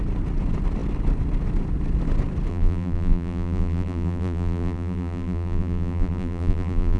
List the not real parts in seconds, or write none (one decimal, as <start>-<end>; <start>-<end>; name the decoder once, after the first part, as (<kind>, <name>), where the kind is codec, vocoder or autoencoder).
2.5-7.0 (vocoder, BigVGAN v2)